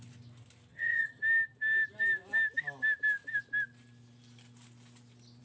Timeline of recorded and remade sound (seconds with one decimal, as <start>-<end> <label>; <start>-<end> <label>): 0.0-0.7 recorded; 0.7-1.2 remade; 1.2-5.4 recorded